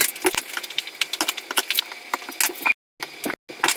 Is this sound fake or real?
real